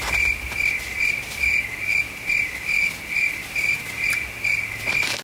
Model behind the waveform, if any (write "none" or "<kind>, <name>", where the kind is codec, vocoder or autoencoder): none